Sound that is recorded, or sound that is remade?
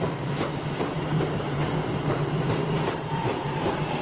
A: remade